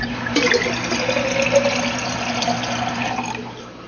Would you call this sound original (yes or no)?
yes